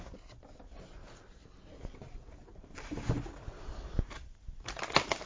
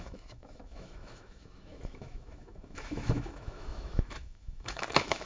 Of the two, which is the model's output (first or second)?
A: second